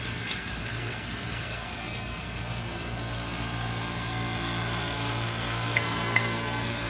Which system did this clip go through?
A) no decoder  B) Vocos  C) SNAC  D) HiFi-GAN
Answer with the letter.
C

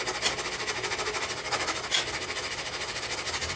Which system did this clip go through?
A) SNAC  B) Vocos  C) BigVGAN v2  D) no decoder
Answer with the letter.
D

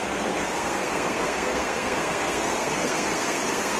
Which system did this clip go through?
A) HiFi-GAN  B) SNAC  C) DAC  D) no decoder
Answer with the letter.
B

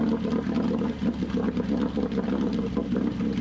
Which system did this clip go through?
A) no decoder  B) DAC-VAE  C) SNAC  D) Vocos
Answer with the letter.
A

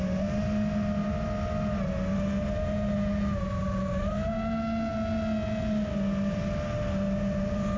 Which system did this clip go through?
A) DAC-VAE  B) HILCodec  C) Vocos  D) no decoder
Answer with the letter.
D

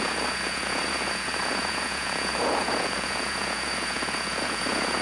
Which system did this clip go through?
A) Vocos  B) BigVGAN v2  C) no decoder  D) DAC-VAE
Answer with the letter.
A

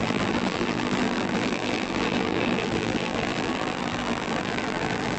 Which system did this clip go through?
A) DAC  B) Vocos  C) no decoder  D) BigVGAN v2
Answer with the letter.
D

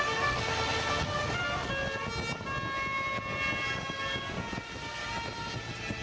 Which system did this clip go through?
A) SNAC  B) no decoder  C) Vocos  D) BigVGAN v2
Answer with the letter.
B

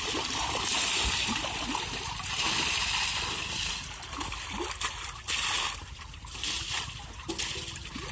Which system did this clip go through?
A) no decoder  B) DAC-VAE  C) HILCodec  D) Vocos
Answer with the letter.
A